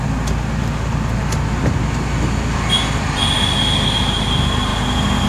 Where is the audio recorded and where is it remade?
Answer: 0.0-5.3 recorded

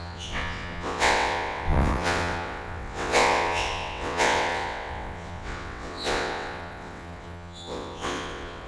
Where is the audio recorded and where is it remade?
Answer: 0.0-8.7 remade

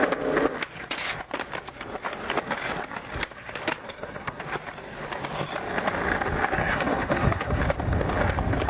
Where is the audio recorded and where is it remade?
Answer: 0.0-3.8 recorded; 3.8-4.4 remade; 4.4-6.6 recorded; 6.6-7.6 remade; 7.6-8.7 recorded

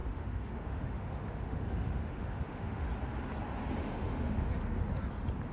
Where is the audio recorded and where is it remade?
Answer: 0.0-2.9 remade; 2.9-3.8 recorded; 3.8-4.5 remade; 4.5-5.5 recorded

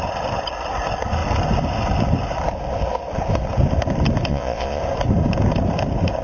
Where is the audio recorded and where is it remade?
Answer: 0.0-4.3 recorded; 4.3-4.8 remade; 4.8-6.2 recorded

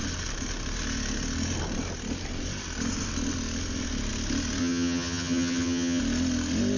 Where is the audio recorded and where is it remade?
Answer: 0.0-4.6 recorded; 4.6-6.0 remade; 6.0-6.8 recorded

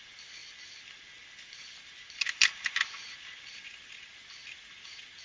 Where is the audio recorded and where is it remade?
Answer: 0.0-5.2 recorded

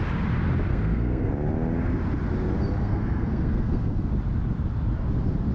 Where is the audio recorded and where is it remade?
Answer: 0.0-0.7 recorded; 0.7-1.3 remade; 1.3-2.8 recorded; 2.8-4.1 remade; 4.1-5.5 recorded